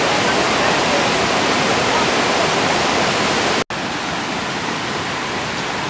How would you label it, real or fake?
real